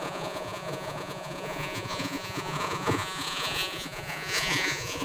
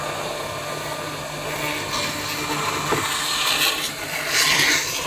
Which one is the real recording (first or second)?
second